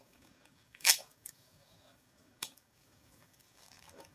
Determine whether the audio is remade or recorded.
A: remade